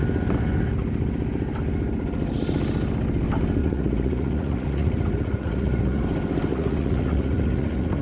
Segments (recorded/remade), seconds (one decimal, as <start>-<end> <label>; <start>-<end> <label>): 0.0-3.6 recorded; 3.6-6.0 remade; 6.0-6.5 recorded; 6.5-8.0 remade